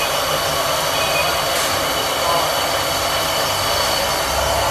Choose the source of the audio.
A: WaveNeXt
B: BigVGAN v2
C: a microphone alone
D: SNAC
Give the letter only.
C